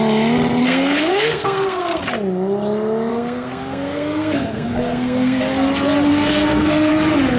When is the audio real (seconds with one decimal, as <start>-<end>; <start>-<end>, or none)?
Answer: 0.0-0.6; 2.0-3.1; 5.4-6.1; 6.9-7.4